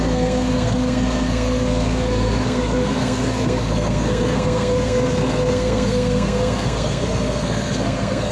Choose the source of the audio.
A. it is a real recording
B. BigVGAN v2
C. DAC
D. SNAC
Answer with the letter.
D